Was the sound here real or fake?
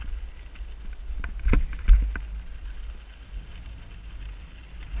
real